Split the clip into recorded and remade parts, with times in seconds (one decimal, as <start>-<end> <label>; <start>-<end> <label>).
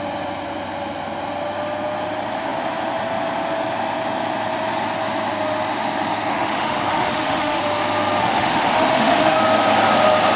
0.0-6.3 recorded; 6.3-7.6 remade; 7.6-8.2 recorded; 8.2-9.4 remade; 9.4-10.4 recorded